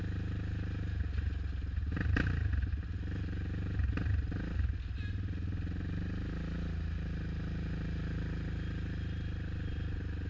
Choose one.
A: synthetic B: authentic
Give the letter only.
B